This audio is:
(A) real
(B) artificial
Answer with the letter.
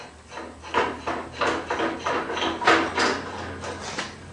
A